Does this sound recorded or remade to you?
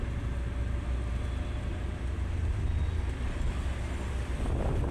recorded